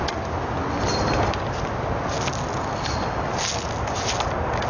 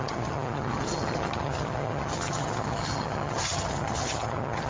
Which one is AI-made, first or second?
second